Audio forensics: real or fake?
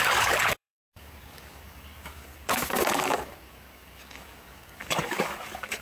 fake